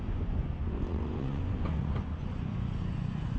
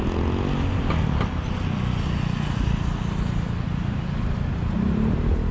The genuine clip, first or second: second